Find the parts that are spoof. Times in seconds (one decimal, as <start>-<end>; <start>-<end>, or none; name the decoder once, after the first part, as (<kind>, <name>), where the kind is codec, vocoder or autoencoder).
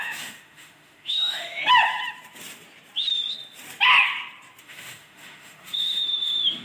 0.0-1.6 (autoencoder, DAC-VAE); 4.6-6.6